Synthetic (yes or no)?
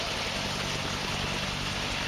no